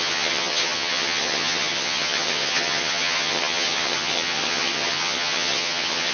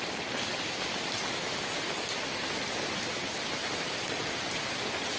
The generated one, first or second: first